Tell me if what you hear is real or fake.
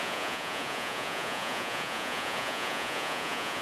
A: fake